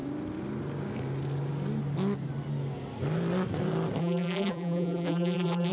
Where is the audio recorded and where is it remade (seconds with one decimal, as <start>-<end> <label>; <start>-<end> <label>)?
0.0-4.0 recorded; 4.0-5.7 remade

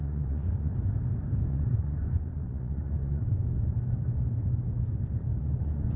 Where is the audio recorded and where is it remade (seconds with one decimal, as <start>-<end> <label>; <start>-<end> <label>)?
0.0-0.7 remade; 0.7-1.5 recorded; 1.5-3.4 remade; 3.4-5.4 recorded; 5.4-6.0 remade

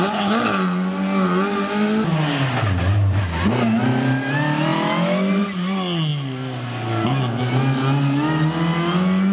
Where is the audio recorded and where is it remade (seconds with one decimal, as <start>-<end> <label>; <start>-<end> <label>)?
0.0-9.3 recorded